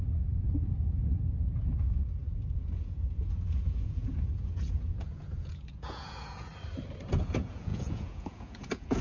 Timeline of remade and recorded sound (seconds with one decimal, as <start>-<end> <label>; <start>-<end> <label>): 0.0-6.5 remade; 6.5-7.1 recorded; 7.1-9.0 remade